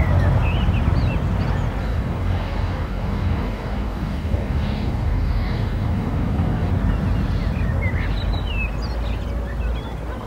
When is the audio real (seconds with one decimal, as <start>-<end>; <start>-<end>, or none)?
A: 0.0-1.8; 6.7-10.3

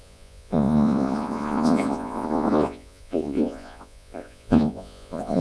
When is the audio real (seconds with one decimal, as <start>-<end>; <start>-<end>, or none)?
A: none

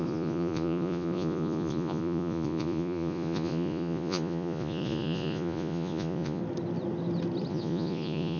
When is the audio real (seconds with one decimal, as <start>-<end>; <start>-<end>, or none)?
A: 6.4-7.5

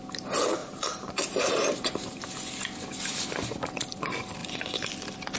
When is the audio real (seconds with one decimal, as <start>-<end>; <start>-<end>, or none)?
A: 0.0-0.6; 2.5-4.4; 4.9-5.4

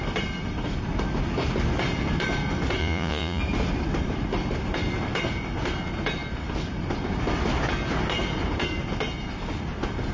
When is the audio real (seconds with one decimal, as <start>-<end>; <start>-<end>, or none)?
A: 0.0-2.8; 3.4-10.1

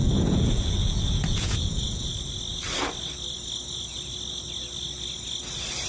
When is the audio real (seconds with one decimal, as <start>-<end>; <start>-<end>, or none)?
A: 2.1-5.9

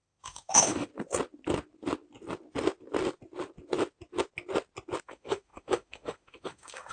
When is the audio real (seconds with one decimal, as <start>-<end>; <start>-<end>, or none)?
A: 0.9-5.0